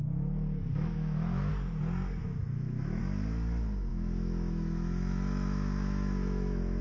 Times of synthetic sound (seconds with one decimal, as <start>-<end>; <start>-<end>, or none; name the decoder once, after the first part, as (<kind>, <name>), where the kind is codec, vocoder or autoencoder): 0.7-1.5 (autoencoder, DAC-VAE); 2.2-3.0; 3.9-6.8